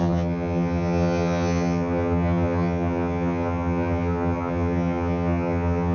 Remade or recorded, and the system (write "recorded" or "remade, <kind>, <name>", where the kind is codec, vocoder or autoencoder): remade, vocoder, HiFi-GAN